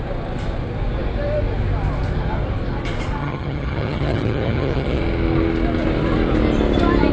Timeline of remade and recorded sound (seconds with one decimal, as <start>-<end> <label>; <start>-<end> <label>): 0.0-3.2 recorded; 3.2-5.0 remade; 5.0-7.1 recorded

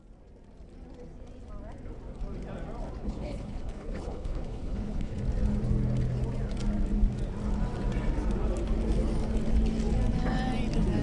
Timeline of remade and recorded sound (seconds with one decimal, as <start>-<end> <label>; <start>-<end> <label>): 0.0-3.0 recorded; 3.0-5.2 remade; 5.2-11.0 recorded

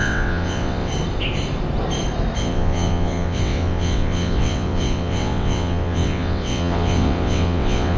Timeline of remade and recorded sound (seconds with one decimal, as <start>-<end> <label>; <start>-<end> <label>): 0.0-0.9 remade; 0.9-2.4 recorded; 2.4-8.0 remade

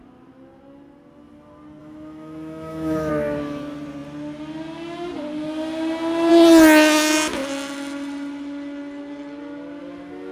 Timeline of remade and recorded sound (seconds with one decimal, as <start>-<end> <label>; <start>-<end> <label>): 0.0-1.8 recorded; 1.8-3.1 remade; 3.1-10.3 recorded

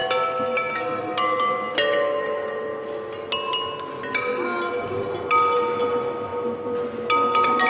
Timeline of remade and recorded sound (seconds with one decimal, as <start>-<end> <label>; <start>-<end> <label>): 0.0-7.7 recorded

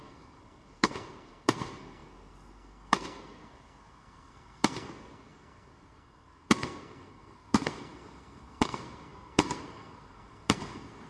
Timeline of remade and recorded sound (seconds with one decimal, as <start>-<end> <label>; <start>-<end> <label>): 0.0-11.1 remade

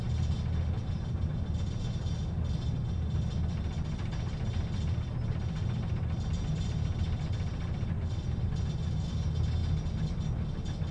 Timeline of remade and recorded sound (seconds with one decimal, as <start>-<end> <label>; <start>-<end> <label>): 0.0-10.9 recorded

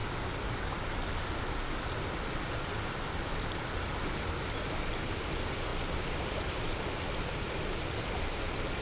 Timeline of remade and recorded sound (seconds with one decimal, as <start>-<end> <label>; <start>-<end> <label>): 0.0-8.8 recorded